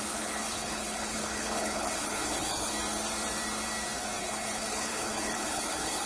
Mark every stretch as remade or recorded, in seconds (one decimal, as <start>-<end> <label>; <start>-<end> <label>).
0.0-2.7 remade; 2.7-4.2 recorded; 4.2-6.1 remade